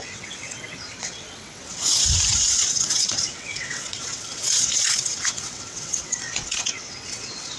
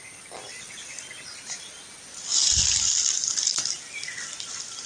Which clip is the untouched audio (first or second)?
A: second